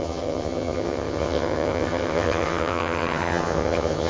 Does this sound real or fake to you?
fake